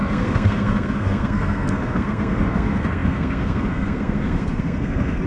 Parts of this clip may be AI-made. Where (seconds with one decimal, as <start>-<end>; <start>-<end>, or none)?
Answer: 0.0-5.3